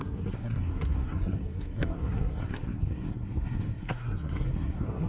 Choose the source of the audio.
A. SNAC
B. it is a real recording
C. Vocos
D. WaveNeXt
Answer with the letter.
A